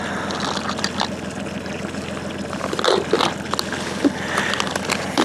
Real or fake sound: real